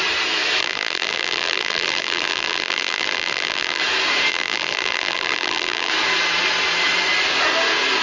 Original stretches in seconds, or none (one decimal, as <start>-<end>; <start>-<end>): 0.0-0.6; 3.8-4.3; 5.9-8.0